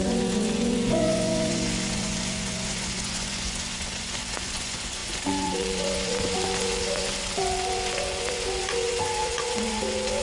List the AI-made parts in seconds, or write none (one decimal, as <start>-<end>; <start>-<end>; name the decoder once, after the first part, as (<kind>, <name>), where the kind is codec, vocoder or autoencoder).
0.0-10.2 (vocoder, Vocos)